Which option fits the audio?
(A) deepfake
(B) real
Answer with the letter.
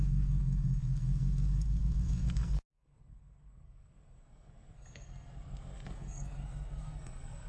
A